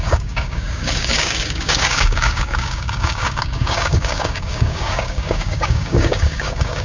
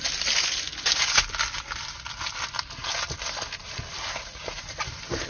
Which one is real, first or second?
second